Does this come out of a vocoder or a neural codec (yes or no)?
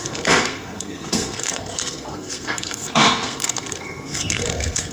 yes